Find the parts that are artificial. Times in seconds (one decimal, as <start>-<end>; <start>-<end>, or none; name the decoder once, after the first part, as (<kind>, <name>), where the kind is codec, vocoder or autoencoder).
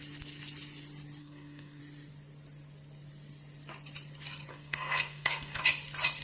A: 1.2-1.8 (codec, SNAC); 4.5-5.6